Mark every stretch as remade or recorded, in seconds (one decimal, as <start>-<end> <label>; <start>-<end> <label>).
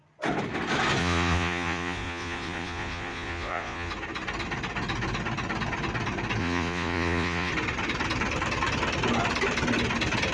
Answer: 0.0-1.0 recorded; 1.0-3.9 remade; 3.9-6.4 recorded; 6.4-7.5 remade; 7.5-10.3 recorded